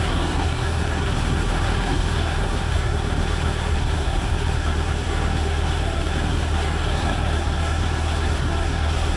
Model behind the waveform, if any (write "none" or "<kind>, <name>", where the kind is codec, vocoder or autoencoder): codec, SNAC